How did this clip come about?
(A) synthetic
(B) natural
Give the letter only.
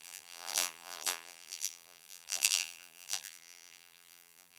A